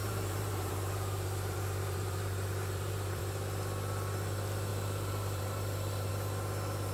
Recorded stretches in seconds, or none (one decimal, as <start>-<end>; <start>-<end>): 3.2-4.7; 6.1-6.9